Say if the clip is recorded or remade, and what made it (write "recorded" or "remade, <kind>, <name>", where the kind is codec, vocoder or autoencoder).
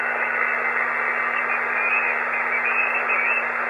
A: recorded